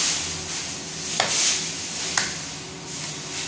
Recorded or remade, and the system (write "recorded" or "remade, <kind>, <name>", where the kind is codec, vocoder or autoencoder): recorded